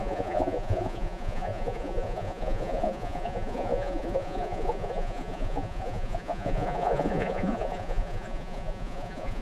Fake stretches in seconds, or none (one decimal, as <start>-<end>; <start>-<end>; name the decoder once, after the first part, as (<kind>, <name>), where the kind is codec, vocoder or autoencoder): 0.0-9.4 (vocoder, Vocos)